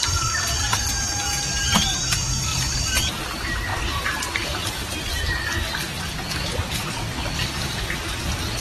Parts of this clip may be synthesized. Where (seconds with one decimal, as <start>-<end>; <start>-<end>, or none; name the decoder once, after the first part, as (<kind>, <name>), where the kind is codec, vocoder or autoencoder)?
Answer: 2.5-3.1 (vocoder, BigVGAN v2); 3.7-5.2